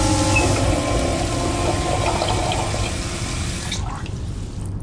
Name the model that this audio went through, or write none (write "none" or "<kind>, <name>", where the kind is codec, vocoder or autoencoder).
none